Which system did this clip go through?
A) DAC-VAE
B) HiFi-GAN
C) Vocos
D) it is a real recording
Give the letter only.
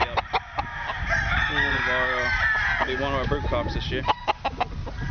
D